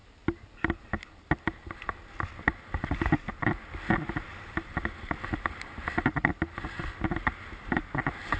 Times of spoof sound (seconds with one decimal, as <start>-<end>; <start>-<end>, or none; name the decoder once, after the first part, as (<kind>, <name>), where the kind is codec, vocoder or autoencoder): none